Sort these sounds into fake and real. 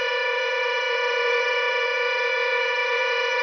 fake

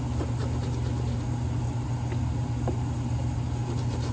real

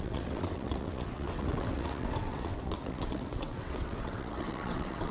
fake